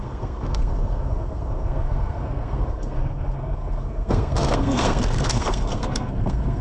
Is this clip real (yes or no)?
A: no